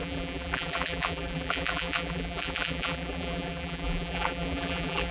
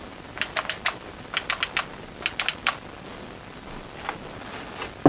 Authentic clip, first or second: second